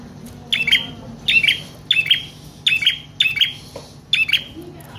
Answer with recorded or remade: recorded